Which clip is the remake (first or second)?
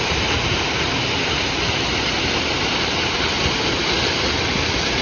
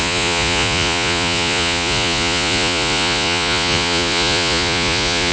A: second